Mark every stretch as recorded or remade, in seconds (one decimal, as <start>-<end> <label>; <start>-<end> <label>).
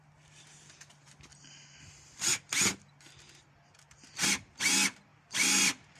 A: 0.0-1.3 recorded; 1.3-4.6 remade; 4.6-5.1 recorded; 5.1-6.0 remade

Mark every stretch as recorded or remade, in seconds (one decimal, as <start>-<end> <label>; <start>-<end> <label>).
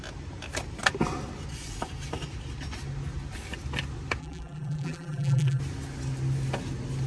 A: 0.0-4.2 recorded; 4.2-5.6 remade; 5.6-7.1 recorded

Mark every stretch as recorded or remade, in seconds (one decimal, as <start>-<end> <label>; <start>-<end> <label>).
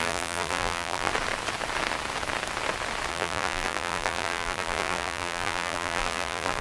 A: 0.0-1.1 remade; 1.1-3.1 recorded; 3.1-6.6 remade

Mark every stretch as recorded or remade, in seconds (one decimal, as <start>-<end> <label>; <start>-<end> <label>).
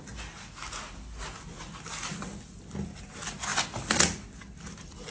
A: 0.0-5.1 recorded